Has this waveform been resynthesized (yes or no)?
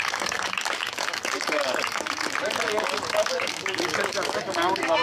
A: yes